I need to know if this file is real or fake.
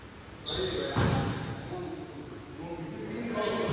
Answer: real